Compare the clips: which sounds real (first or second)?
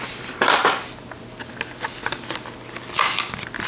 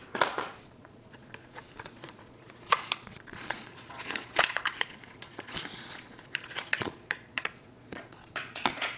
first